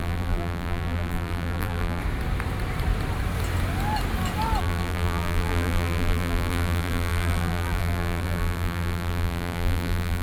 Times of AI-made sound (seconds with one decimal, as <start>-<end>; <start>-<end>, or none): 0.0-2.0; 4.6-10.2